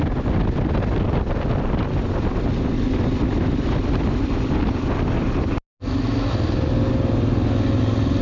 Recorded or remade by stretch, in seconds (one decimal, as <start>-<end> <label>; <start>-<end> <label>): 0.0-8.2 recorded